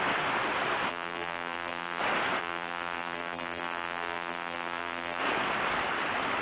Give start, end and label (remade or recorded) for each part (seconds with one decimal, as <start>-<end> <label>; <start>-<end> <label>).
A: 0.0-0.9 recorded; 0.9-2.0 remade; 2.0-2.4 recorded; 2.4-5.2 remade; 5.2-6.4 recorded